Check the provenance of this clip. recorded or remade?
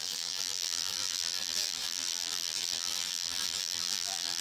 remade